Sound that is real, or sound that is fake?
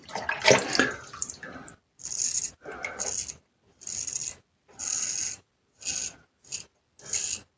real